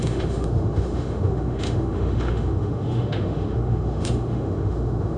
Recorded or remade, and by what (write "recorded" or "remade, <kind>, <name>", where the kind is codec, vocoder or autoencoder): remade, autoencoder, DAC-VAE